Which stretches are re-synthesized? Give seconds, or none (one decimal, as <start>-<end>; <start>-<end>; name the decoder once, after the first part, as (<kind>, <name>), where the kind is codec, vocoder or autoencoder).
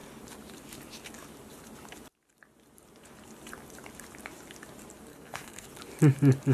5.1-5.7 (codec, SNAC)